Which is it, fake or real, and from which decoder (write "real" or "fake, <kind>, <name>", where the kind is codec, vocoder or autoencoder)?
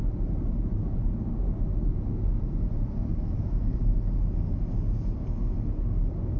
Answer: real